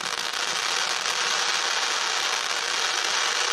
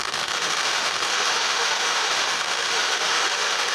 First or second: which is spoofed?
second